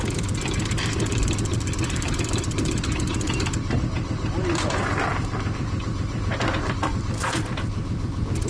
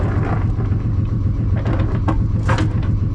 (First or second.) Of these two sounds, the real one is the second